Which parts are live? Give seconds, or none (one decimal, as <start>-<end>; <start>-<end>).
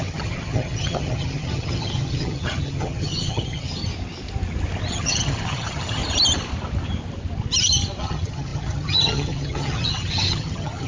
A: 3.8-4.9; 6.0-8.0